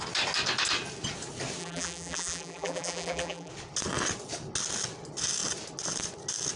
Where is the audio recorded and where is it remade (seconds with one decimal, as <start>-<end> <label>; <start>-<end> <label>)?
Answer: 0.0-1.6 recorded; 1.6-3.5 remade; 3.5-6.6 recorded